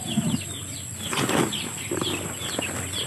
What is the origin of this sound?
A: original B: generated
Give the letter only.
A